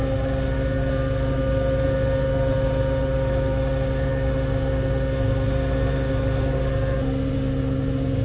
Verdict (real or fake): real